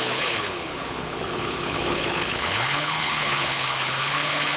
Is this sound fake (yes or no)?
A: yes